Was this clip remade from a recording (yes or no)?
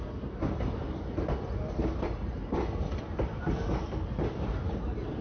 no